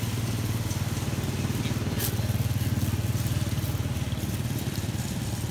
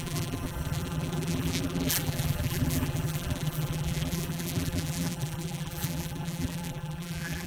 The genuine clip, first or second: first